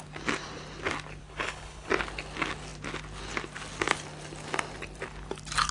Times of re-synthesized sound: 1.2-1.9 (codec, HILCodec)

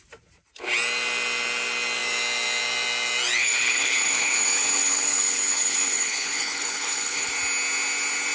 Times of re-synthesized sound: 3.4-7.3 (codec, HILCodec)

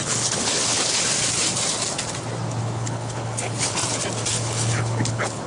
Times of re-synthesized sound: 0.0-1.1 (codec, HILCodec); 2.6-3.8; 4.3-5.5

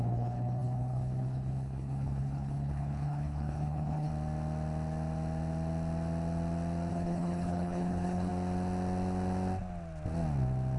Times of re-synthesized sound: 0.0-4.1 (codec, HILCodec); 6.9-8.3